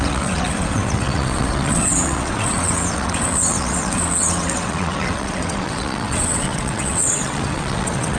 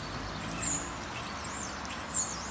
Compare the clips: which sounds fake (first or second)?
first